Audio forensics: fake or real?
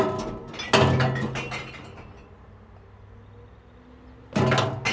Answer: real